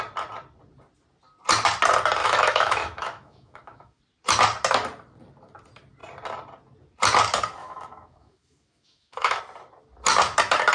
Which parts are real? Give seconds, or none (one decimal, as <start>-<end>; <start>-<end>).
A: 0.0-2.2; 4.0-7.6; 9.4-10.7